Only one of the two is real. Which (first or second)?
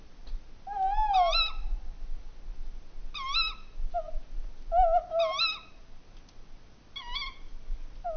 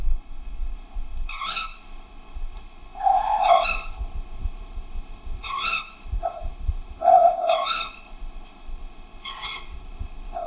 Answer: first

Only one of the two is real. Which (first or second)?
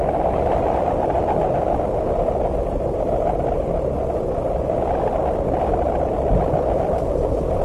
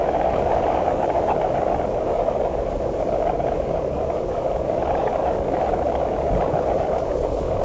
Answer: first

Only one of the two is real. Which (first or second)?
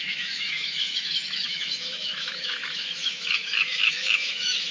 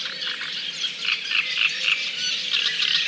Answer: second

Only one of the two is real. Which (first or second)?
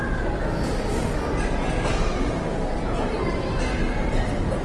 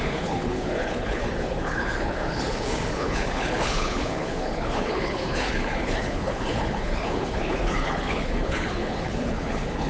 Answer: first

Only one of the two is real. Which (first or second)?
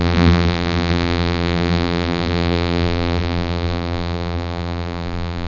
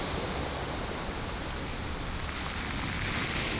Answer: second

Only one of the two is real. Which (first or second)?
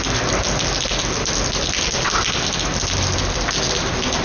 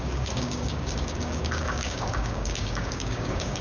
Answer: first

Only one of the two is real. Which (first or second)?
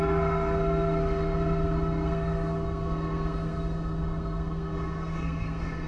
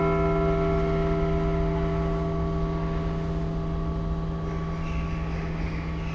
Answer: second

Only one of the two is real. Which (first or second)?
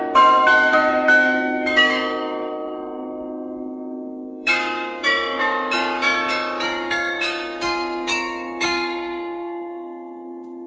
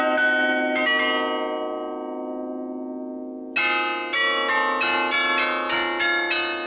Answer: second